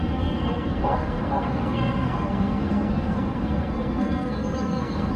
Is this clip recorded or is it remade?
remade